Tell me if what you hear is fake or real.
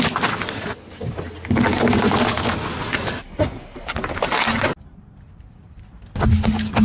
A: real